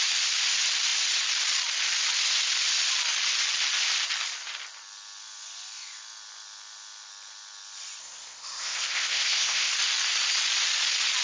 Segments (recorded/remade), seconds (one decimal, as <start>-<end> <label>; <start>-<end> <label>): 0.0-8.0 recorded; 8.0-9.7 remade; 9.7-11.2 recorded